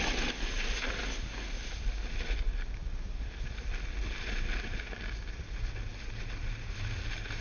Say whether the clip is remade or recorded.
recorded